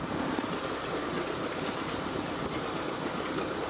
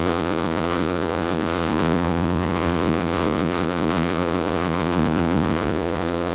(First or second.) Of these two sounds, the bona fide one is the first